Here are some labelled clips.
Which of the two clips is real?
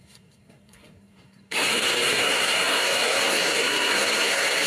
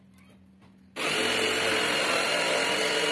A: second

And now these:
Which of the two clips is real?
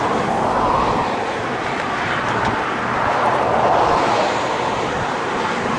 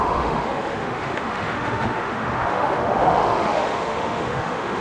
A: first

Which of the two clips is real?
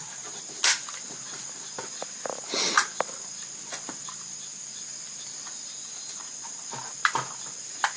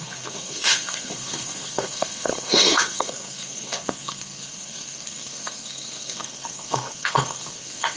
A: first